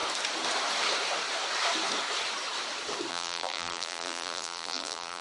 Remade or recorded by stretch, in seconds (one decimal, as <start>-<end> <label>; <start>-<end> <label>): 0.0-3.1 recorded; 3.1-5.2 remade